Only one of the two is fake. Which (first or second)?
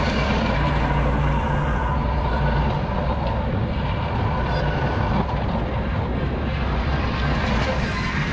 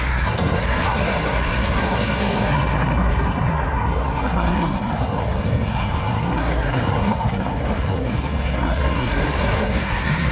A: second